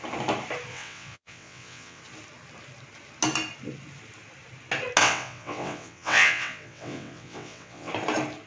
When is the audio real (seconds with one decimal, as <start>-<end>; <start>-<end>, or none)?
0.0-0.7; 2.0-5.0; 7.9-8.5